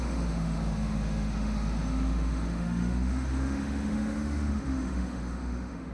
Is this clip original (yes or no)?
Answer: no